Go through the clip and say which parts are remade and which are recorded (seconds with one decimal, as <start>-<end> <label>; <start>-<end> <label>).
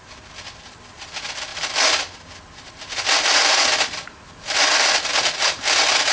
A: 0.0-6.1 recorded